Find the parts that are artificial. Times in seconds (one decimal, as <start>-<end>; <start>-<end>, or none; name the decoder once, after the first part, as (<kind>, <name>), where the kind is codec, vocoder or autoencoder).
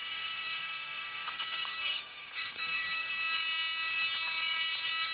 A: 0.0-3.1 (codec, SNAC)